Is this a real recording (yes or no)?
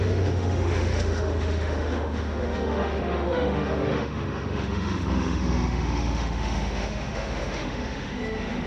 no